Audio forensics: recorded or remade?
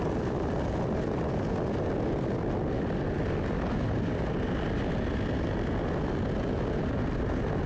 recorded